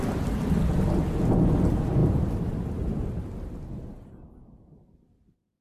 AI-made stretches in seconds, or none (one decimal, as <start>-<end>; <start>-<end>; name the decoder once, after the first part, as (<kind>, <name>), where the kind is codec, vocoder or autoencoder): 2.0-3.1 (vocoder, BigVGAN v2)